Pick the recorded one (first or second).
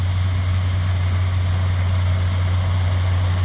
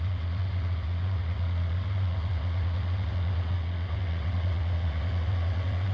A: first